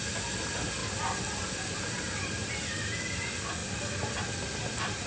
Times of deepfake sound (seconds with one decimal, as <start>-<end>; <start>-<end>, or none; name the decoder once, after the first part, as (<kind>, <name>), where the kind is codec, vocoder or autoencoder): none